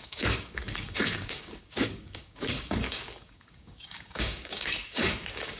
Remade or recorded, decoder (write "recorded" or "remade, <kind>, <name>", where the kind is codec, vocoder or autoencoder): remade, codec, DAC